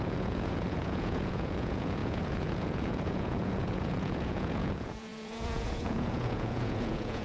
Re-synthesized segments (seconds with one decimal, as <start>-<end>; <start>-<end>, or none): 0.0-7.2